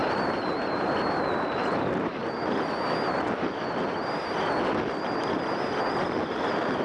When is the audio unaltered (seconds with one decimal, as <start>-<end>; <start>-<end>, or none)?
2.2-6.3